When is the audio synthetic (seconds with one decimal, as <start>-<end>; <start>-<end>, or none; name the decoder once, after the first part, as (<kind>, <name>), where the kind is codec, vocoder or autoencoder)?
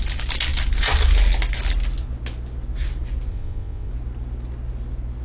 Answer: 3.3-3.9 (vocoder, WaveNeXt)